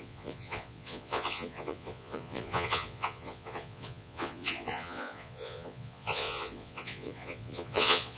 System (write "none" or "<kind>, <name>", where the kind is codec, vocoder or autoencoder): vocoder, Vocos